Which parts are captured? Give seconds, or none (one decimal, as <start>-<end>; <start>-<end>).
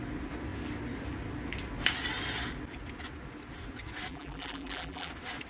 0.0-4.1; 5.1-5.5